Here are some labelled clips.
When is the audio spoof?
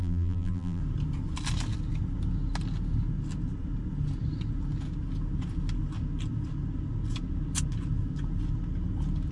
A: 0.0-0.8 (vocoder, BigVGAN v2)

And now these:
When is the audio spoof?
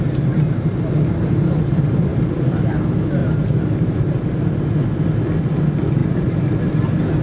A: 3.2-4.4 (vocoder, BigVGAN v2); 6.0-6.7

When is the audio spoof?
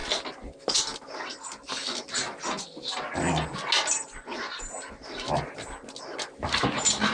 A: none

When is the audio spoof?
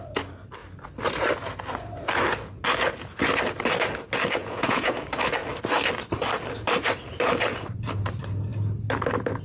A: 4.4-5.0 (vocoder, Vocos)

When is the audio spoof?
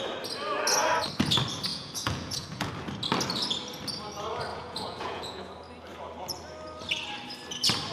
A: 1.7-2.7 (vocoder, Vocos); 4.5-5.4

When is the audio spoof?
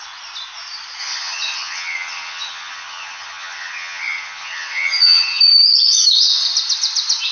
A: 1.0-5.4 (vocoder, HiFi-GAN)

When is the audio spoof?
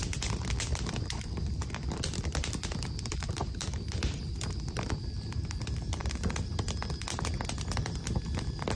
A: 0.0-8.8 (vocoder, BigVGAN v2)